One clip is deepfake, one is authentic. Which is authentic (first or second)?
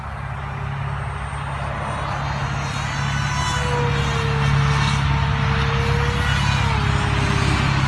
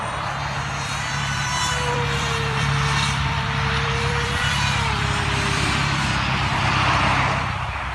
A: first